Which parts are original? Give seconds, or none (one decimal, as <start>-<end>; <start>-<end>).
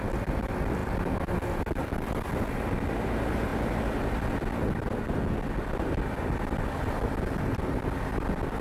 0.0-8.6